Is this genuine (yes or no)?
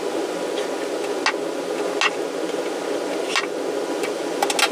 yes